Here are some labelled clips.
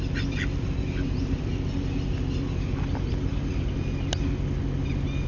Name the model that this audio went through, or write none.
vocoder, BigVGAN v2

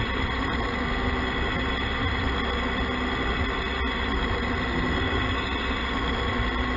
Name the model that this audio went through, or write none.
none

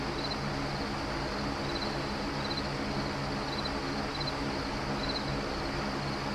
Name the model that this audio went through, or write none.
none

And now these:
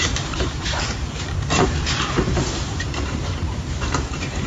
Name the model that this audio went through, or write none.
vocoder, BigVGAN v2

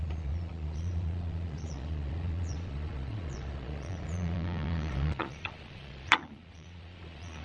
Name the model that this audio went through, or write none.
vocoder, Vocos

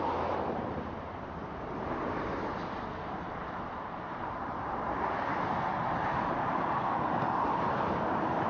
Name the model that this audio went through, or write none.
vocoder, BigVGAN v2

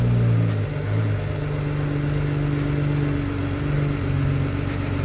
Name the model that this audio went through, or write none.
none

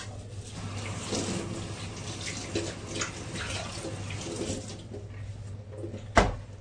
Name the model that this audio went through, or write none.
none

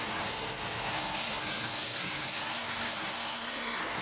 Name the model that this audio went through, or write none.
codec, SNAC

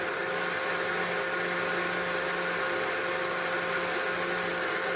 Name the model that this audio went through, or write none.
none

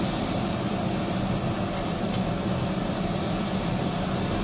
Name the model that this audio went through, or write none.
none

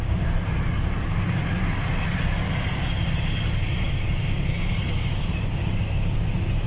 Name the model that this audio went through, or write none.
none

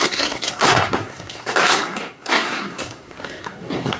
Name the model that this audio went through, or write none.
codec, SNAC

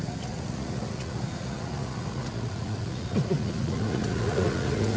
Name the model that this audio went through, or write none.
vocoder, Vocos